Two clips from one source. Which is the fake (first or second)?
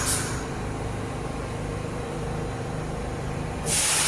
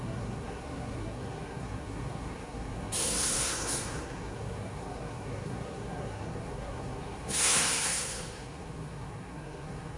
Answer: second